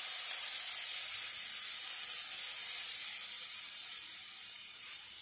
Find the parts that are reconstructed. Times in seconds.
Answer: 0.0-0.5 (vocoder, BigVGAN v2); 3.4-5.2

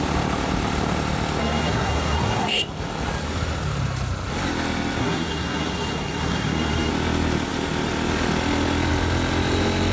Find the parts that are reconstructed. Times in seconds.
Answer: 1.4-2.6 (codec, SNAC); 5.0-6.9

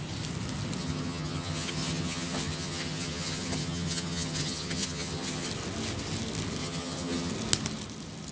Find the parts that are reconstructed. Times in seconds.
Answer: 0.8-5.5 (vocoder, HiFi-GAN); 6.6-7.3

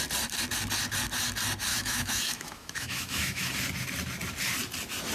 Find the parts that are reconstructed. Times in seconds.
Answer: 1.7-3.5 (autoencoder, DAC-VAE)